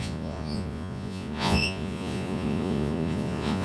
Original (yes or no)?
no